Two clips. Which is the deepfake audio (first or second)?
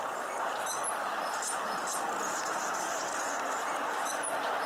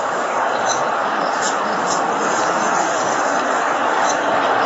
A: second